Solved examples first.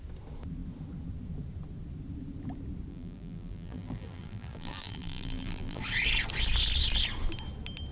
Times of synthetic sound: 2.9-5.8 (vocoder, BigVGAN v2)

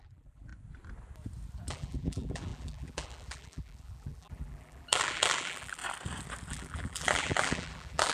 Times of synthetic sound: 0.0-0.5 (vocoder, BigVGAN v2); 1.7-5.8; 6.5-8.1

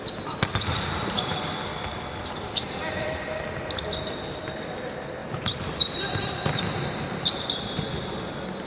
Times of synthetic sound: 5.2-6.6 (vocoder, BigVGAN v2)

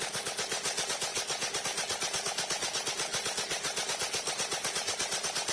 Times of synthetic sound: none

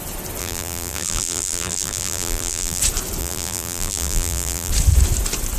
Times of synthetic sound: 0.4-2.8 (vocoder, BigVGAN v2); 3.2-4.7

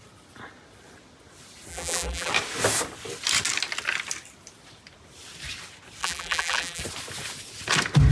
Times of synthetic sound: 1.7-2.3 (vocoder, BigVGAN v2); 6.0-6.8

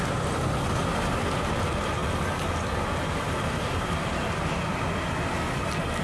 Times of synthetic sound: none